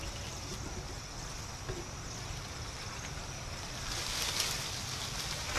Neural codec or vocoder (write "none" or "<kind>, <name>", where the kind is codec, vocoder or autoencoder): none